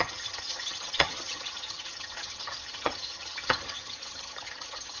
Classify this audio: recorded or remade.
remade